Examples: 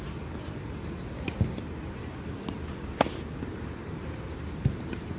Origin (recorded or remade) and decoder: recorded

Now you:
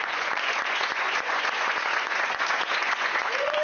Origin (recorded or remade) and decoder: remade, vocoder, Vocos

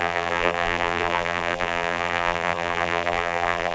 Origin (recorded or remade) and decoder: remade, vocoder, BigVGAN v2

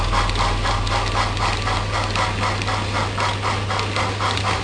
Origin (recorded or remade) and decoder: recorded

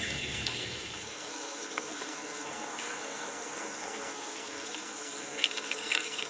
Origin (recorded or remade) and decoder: remade, codec, SNAC